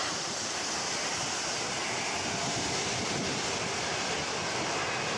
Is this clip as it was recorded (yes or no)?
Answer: yes